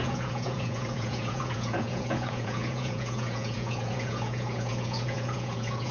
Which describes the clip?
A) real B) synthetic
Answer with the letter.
B